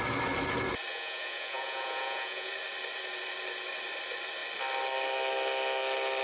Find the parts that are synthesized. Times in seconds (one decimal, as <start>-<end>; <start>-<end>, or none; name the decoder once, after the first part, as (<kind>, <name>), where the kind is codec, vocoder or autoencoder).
0.9-2.5 (vocoder, Vocos)